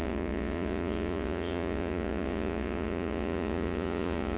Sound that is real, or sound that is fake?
fake